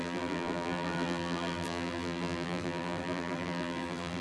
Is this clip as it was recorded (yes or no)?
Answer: no